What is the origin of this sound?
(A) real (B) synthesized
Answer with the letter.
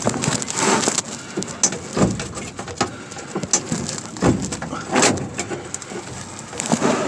A